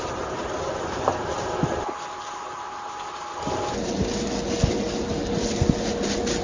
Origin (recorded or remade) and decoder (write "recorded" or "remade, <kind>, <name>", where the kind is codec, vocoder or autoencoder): recorded